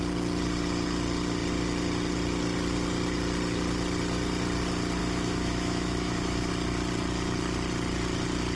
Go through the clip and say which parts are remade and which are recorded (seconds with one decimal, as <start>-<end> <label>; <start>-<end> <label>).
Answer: 0.0-5.0 recorded; 5.0-6.5 remade; 6.5-8.6 recorded